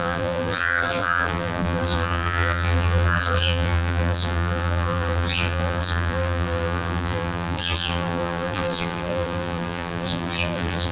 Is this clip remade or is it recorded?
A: remade